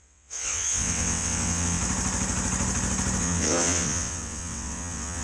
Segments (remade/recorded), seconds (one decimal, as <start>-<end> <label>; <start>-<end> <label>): 0.0-1.8 remade; 1.8-3.2 recorded; 3.2-5.2 remade